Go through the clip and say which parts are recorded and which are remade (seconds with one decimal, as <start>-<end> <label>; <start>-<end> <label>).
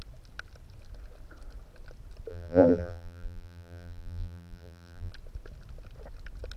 0.0-2.3 recorded; 2.3-5.1 remade; 5.1-6.6 recorded